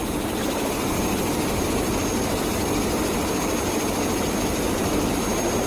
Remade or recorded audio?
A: recorded